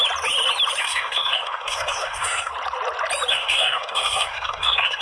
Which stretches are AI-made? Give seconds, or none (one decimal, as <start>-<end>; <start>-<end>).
0.8-2.5; 3.3-5.0